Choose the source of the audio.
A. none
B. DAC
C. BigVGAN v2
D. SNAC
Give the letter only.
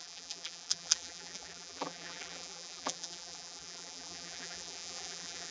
C